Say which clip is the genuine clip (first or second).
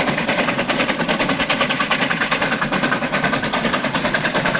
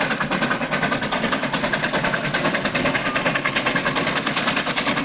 second